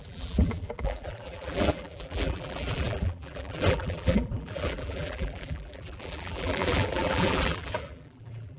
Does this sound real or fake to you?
fake